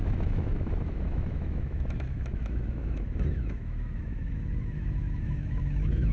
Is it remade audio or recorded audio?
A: remade